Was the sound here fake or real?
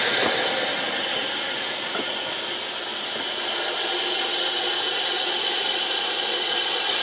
real